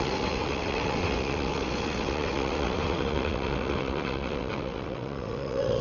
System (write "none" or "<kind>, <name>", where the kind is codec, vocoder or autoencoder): vocoder, WaveNeXt